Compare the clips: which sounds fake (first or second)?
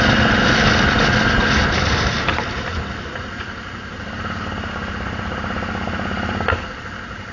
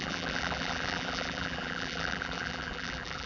second